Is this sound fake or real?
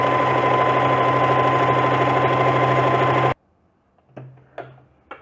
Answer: real